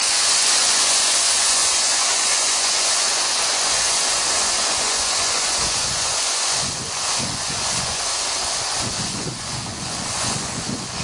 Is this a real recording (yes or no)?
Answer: no